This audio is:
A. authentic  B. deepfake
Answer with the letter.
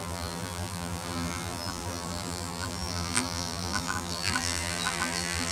B